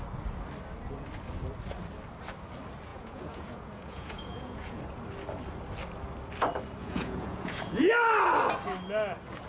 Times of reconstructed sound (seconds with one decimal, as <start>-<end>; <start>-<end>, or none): 2.9-4.8; 6.8-7.9